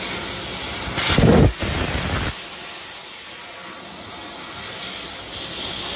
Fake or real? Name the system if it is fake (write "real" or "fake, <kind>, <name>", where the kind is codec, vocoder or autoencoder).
real